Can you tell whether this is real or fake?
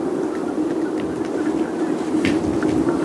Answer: real